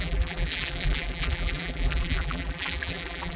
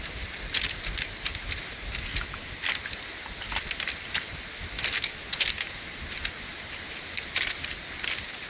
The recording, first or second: second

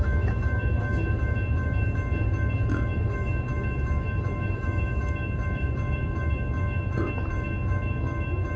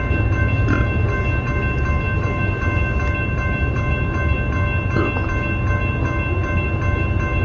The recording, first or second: second